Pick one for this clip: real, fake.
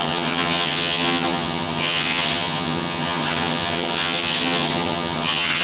fake